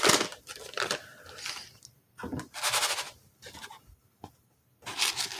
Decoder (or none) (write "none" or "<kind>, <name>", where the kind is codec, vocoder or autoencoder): none